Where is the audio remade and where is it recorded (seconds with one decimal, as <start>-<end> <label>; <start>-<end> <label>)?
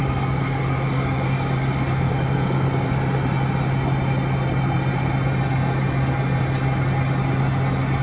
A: 0.0-2.9 remade; 2.9-8.0 recorded